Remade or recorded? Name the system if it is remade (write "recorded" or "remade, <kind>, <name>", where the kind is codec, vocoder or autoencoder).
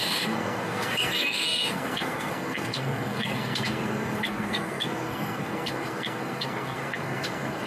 remade, codec, SNAC